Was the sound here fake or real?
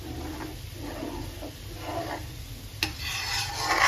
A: real